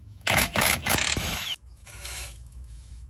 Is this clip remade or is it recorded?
remade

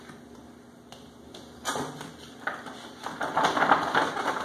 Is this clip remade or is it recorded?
recorded